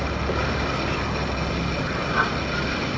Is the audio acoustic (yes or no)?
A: yes